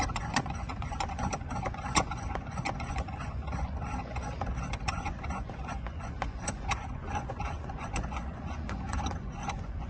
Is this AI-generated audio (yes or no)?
yes